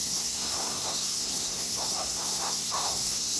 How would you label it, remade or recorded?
remade